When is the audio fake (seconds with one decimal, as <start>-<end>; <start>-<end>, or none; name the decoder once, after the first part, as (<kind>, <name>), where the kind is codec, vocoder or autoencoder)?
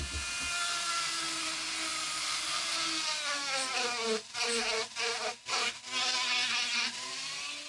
none